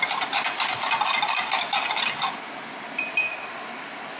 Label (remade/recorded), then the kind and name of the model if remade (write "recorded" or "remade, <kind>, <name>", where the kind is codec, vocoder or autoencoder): recorded